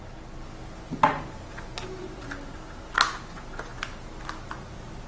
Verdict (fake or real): real